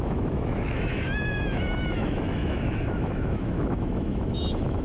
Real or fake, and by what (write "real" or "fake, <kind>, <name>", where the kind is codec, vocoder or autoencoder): fake, autoencoder, DAC-VAE